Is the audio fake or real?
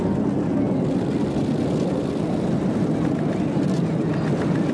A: real